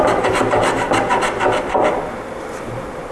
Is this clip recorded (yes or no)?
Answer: yes